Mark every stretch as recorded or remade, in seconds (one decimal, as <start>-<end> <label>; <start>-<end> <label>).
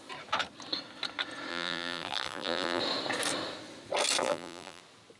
0.0-1.5 recorded; 1.5-2.8 remade; 2.8-4.2 recorded; 4.2-4.8 remade; 4.8-5.2 recorded